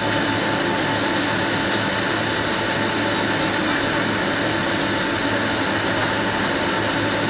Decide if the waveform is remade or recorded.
recorded